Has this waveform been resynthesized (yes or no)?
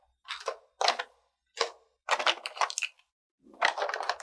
no